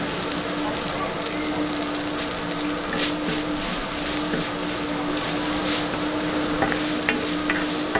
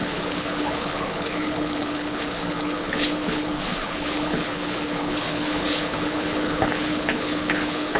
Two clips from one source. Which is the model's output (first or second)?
second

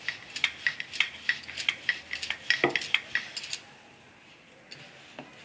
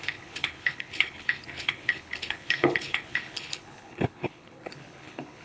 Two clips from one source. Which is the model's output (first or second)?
second